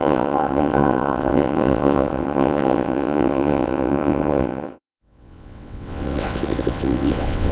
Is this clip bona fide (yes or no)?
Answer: no